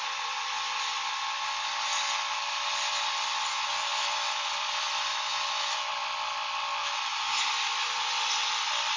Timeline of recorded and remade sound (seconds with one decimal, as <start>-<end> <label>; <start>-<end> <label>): 0.0-3.5 recorded; 3.5-4.5 remade; 4.5-5.1 recorded; 5.1-5.9 remade; 5.9-6.8 recorded; 6.8-7.5 remade; 7.5-9.0 recorded